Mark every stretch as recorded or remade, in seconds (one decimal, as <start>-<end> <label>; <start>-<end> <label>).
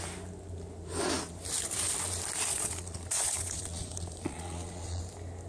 0.0-2.5 recorded; 2.5-5.0 remade; 5.0-5.5 recorded